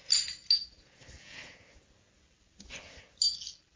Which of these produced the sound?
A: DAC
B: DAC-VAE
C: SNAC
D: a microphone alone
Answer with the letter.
D